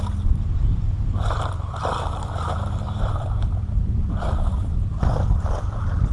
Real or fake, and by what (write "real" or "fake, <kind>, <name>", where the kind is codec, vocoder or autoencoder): fake, vocoder, BigVGAN v2